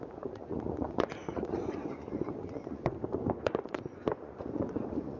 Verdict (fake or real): fake